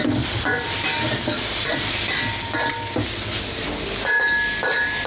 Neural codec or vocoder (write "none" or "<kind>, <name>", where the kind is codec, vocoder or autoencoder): none